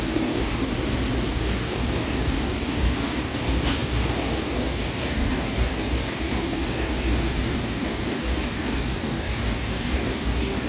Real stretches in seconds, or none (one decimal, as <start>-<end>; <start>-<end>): 0.7-1.3